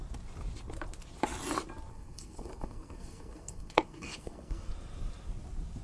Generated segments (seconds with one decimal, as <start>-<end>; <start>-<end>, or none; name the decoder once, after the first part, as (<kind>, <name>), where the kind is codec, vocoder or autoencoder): 1.9-4.7 (codec, SNAC)